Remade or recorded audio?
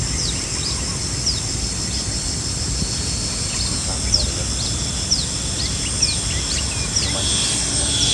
recorded